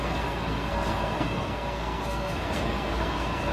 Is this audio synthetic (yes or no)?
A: yes